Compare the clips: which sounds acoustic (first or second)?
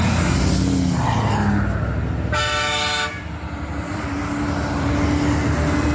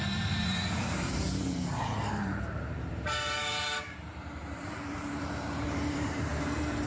first